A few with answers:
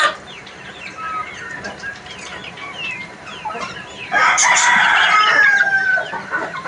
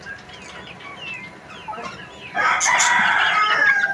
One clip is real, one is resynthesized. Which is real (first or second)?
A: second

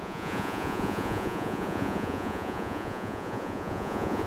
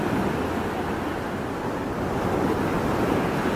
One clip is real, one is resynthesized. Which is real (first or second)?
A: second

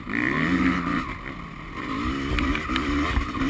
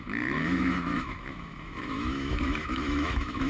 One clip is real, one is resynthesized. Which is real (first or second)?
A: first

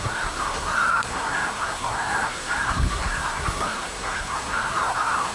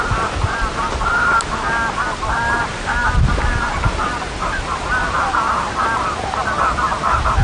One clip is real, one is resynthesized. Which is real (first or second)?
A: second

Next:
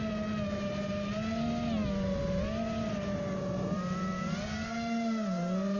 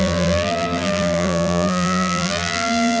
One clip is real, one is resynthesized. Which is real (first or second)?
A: first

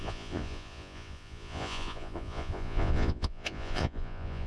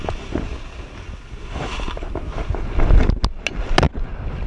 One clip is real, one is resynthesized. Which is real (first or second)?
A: second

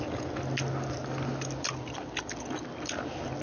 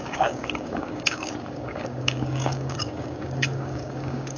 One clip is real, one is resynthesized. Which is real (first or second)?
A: first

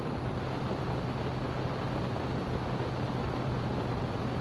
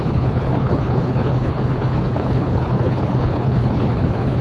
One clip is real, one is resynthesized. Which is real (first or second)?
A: first